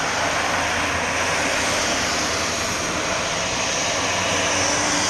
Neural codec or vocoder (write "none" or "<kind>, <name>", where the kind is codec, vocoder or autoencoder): none